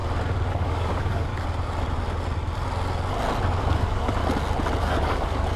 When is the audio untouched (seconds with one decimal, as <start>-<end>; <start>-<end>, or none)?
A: 0.0-0.5; 1.3-3.6; 4.2-4.8